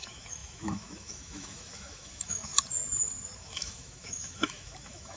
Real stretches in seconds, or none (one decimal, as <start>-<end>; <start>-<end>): 2.5-3.4